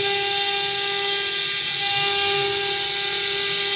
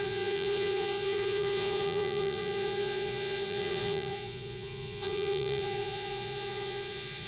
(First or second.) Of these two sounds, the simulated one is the second